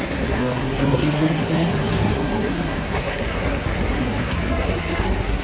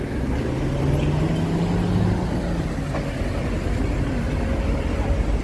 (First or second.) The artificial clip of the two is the first